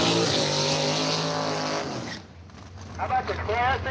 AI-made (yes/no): no